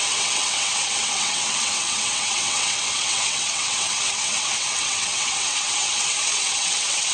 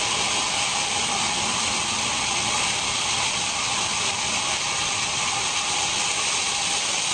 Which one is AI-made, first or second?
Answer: first